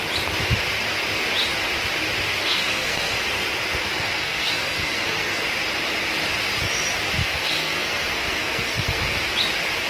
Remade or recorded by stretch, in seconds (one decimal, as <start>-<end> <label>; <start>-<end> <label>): 0.0-2.4 recorded; 2.4-3.2 remade; 3.2-3.9 recorded; 3.9-5.4 remade; 5.4-7.2 recorded; 7.2-9.2 remade; 9.2-9.9 recorded